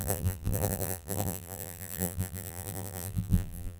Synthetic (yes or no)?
yes